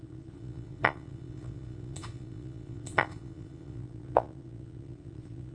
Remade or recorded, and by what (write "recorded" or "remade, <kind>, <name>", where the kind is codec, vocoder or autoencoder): remade, vocoder, Vocos